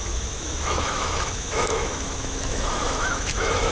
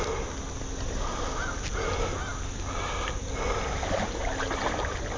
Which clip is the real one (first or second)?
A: second